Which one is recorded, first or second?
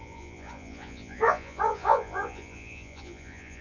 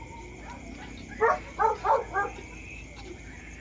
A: second